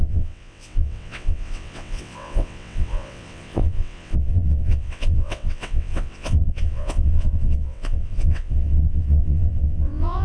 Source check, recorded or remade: remade